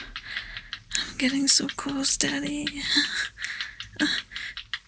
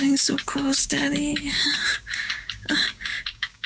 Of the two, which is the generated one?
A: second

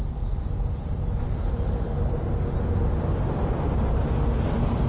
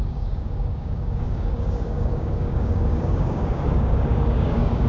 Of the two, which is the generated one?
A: second